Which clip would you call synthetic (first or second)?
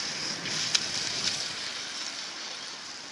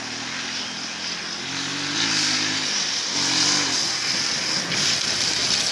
first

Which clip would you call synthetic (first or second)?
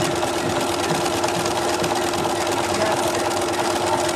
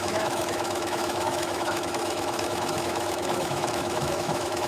second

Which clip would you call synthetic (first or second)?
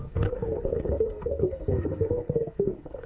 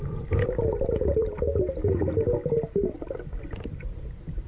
first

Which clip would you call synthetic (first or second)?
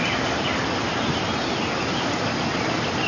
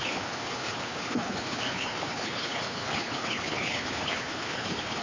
second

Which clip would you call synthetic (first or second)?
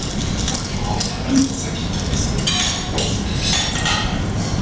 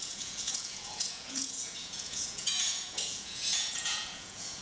second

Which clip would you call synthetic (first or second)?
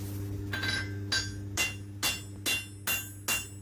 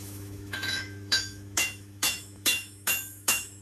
second